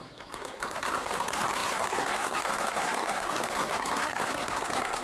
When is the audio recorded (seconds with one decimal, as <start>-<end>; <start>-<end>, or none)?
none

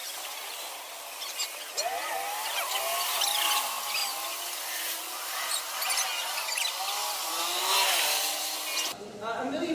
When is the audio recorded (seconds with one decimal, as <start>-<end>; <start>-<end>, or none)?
1.7-9.7

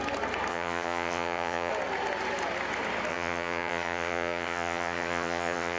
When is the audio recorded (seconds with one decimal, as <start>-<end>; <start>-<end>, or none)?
0.0-0.5; 1.7-3.1

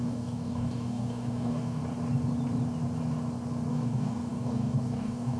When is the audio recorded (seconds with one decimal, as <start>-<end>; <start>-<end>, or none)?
1.8-3.7

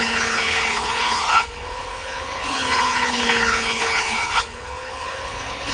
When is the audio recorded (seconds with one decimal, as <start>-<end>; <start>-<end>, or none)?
none

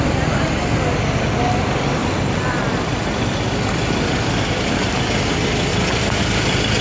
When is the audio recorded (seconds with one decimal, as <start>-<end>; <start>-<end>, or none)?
0.0-6.8